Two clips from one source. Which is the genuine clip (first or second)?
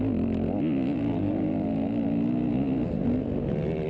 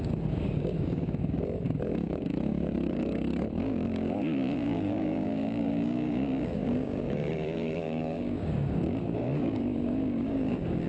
first